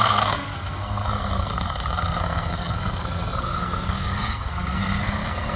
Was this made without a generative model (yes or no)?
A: no